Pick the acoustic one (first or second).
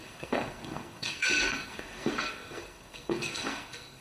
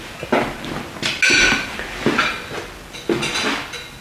second